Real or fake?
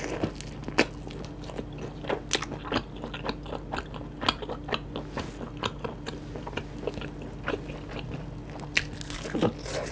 real